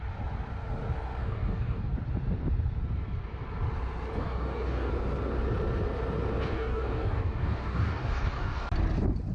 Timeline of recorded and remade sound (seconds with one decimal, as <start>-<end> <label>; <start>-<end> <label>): 0.0-1.2 recorded; 1.2-1.9 remade; 1.9-4.2 recorded; 4.2-4.9 remade; 4.9-6.5 recorded; 6.5-8.6 remade; 8.6-9.3 recorded